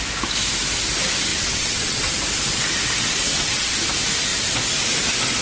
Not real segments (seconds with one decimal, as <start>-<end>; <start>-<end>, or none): 1.3-2.1; 3.1-3.8